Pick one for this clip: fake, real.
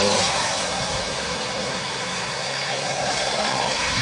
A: fake